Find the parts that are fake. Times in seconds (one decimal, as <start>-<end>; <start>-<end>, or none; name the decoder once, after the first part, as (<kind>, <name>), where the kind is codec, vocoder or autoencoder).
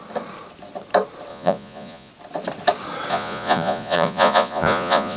1.3-2.1 (vocoder, Vocos); 3.1-5.2